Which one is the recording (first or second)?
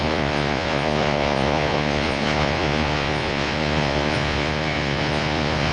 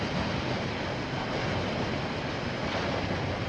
second